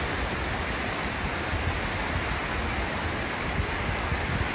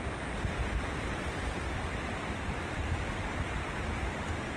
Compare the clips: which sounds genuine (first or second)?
first